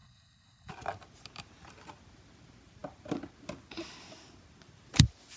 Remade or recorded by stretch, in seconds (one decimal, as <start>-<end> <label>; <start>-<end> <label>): 0.0-0.7 remade; 0.7-5.4 recorded

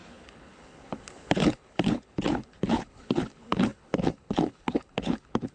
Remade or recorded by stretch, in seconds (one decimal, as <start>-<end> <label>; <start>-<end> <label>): 0.0-5.5 remade

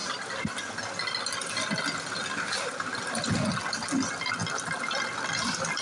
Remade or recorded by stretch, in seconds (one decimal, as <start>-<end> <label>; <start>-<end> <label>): 0.0-5.8 recorded